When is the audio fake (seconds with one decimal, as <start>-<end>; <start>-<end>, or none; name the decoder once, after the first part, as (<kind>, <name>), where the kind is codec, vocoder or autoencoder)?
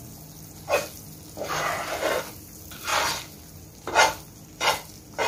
2.9-3.9 (vocoder, BigVGAN v2)